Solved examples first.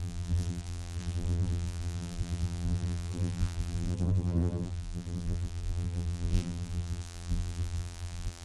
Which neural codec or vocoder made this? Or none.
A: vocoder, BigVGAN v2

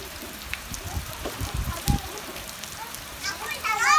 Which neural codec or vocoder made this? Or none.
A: vocoder, BigVGAN v2